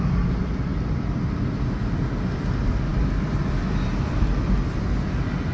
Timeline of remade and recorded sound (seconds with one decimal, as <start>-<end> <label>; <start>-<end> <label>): 0.0-5.5 recorded